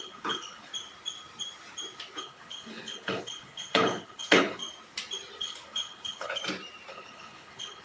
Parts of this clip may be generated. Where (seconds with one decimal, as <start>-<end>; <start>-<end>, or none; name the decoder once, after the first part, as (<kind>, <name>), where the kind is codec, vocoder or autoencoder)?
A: 0.0-0.7 (codec, HILCodec); 2.2-4.6; 5.4-6.4; 6.9-7.8